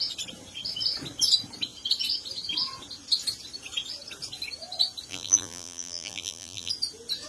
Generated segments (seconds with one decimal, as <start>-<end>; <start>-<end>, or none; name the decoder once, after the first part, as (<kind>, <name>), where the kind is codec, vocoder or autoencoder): 5.1-6.7 (vocoder, BigVGAN v2)

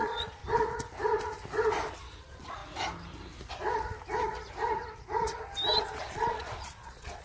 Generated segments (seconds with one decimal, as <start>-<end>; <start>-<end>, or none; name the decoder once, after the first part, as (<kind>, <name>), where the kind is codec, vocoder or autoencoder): 0.0-0.4 (vocoder, Vocos); 2.2-2.6; 6.0-7.2

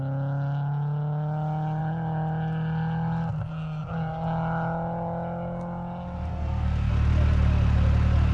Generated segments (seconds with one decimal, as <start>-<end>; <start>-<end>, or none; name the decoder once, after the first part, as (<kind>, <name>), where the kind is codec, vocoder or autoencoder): 6.3-6.9 (codec, SNAC)